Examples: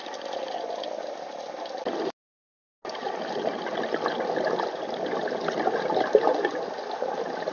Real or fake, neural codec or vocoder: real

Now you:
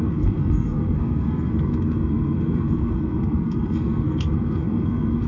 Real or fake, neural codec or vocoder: fake, codec, SNAC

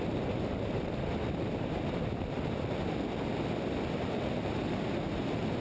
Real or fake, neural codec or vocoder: real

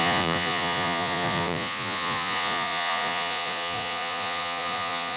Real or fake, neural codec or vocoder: fake, vocoder, Vocos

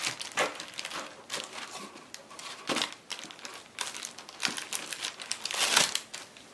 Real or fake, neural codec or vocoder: real